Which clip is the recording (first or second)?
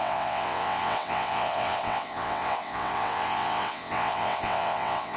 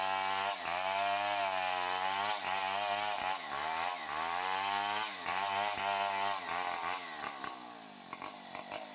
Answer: second